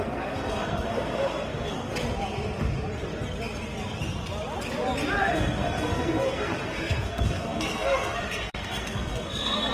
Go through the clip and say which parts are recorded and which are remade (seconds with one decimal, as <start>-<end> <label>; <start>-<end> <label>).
0.0-1.9 remade; 1.9-5.2 recorded; 5.2-9.7 remade

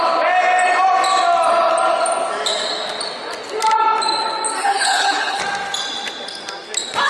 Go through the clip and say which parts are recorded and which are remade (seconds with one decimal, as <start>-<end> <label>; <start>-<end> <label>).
0.0-4.6 recorded; 4.6-5.4 remade; 5.4-7.1 recorded

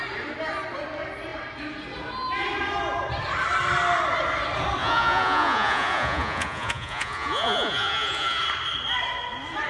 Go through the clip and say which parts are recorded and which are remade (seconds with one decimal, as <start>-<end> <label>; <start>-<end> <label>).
0.0-4.8 recorded; 4.8-8.4 remade; 8.4-9.7 recorded

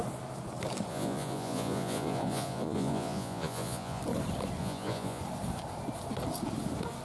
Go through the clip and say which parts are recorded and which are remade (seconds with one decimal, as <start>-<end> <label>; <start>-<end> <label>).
0.0-0.9 recorded; 0.9-4.0 remade; 4.0-4.6 recorded; 4.6-5.2 remade; 5.2-7.0 recorded

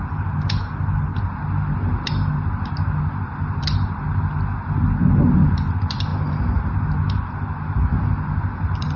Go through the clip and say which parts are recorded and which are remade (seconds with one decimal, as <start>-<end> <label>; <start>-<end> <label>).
0.0-9.0 recorded

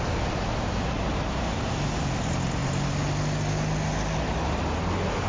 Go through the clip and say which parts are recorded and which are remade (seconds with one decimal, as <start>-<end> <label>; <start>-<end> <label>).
0.0-5.3 recorded

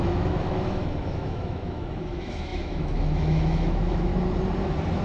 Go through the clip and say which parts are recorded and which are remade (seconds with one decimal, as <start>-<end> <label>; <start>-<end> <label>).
0.0-4.1 remade; 4.1-5.0 recorded